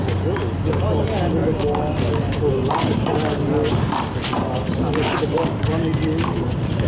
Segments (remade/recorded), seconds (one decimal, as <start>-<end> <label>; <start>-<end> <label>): 0.0-6.9 recorded